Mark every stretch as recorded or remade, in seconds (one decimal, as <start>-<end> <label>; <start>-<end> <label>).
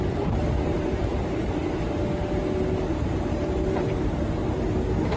0.0-1.6 remade; 1.6-2.9 recorded; 2.9-4.4 remade; 4.4-5.2 recorded